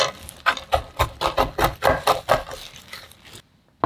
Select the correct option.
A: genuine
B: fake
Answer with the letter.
A